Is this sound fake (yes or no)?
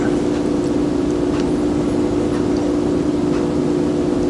no